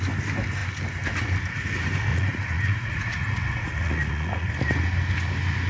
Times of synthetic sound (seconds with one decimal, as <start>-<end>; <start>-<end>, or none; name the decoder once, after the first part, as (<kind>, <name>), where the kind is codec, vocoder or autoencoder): 2.1-4.5 (vocoder, Vocos)